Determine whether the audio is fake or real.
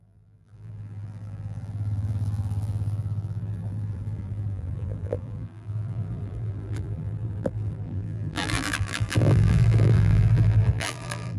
fake